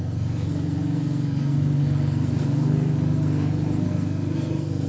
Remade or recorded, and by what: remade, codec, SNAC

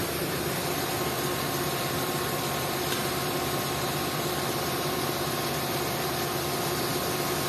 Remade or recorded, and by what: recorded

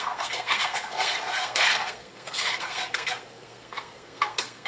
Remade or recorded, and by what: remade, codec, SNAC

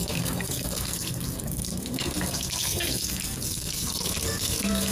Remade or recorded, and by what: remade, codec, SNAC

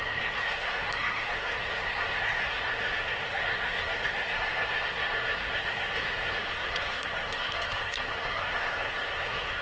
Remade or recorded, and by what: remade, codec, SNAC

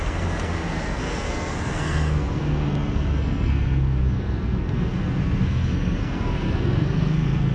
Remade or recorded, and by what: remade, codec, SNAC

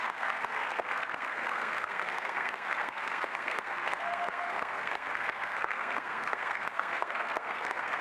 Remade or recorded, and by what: remade, codec, SNAC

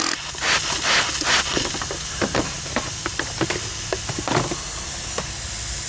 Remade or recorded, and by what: recorded